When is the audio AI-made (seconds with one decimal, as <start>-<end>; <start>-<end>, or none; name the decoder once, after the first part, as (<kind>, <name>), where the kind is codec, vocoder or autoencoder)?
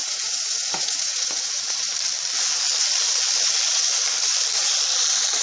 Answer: 0.0-1.9 (vocoder, Vocos)